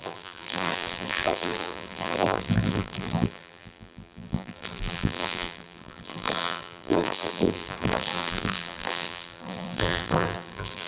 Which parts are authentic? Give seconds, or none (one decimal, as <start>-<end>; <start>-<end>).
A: none

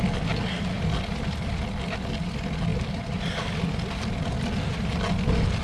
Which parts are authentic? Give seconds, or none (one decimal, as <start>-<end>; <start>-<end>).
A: 0.0-2.7; 3.2-5.6

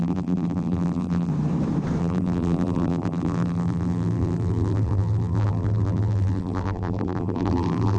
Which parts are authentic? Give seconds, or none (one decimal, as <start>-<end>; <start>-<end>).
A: 1.3-2.0

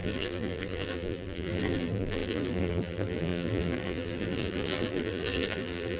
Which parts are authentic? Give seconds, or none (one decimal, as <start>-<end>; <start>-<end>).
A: none

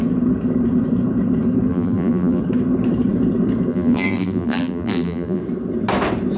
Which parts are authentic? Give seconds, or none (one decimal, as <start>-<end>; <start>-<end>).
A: 0.0-1.7; 2.4-3.7; 5.4-6.4

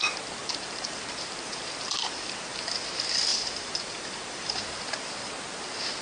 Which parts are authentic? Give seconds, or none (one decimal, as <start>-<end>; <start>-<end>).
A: 0.0-0.4; 1.3-2.0; 2.6-3.3; 4.6-6.0

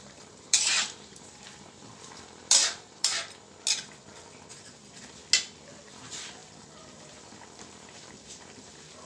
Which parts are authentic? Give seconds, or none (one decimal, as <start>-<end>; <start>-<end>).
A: 3.1-4.5; 5.2-6.0